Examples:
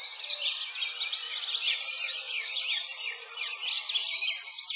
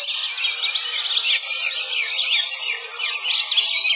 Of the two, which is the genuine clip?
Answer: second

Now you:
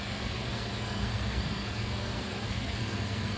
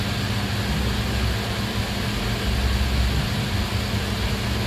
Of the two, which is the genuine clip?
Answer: second